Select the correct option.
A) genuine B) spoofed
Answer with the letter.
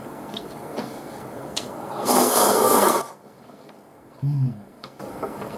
B